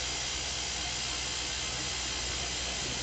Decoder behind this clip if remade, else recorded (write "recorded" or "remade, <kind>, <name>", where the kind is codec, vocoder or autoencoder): recorded